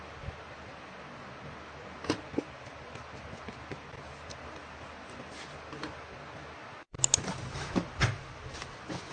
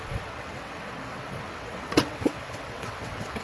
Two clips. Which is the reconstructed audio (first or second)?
second